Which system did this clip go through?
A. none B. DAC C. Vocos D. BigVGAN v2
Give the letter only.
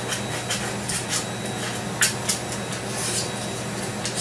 A